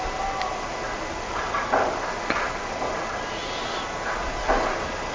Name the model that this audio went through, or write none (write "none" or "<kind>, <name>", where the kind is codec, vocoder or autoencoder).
none